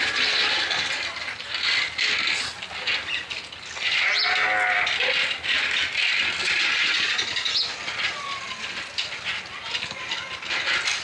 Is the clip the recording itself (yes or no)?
yes